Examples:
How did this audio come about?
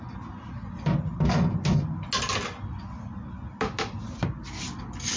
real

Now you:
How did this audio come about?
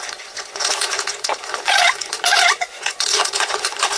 fake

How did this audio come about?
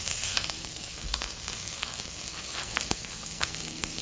fake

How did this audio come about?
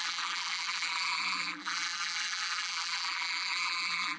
fake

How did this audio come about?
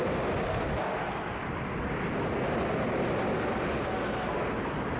real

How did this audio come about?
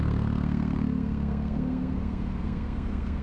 fake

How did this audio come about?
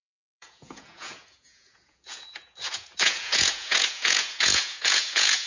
fake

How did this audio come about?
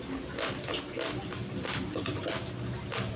real